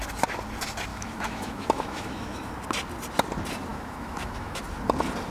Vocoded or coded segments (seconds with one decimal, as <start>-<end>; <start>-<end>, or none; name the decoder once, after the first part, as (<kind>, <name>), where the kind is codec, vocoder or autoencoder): 0.9-2.5 (autoencoder, DAC-VAE); 3.7-4.6